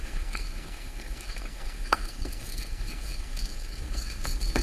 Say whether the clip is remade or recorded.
remade